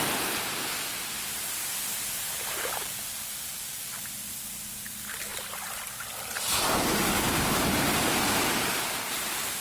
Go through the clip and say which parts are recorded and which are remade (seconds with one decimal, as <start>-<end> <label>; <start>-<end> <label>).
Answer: 0.0-9.6 recorded